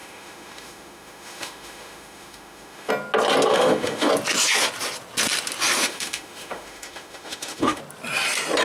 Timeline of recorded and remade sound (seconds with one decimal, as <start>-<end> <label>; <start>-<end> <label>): 0.0-2.9 remade; 2.9-3.5 recorded; 3.5-4.1 remade; 4.1-5.8 recorded; 5.8-7.8 remade; 7.8-8.6 recorded